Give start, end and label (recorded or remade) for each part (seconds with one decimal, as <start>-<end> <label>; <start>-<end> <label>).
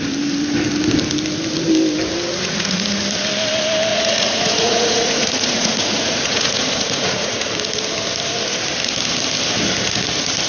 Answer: 0.0-2.3 recorded; 2.3-3.0 remade; 3.0-3.9 recorded; 3.9-7.4 remade; 7.4-10.5 recorded